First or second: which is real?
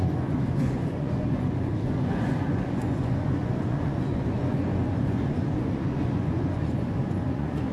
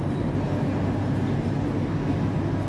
second